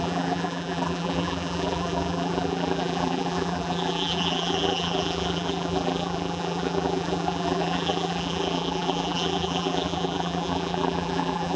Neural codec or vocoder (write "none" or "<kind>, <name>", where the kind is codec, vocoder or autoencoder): vocoder, BigVGAN v2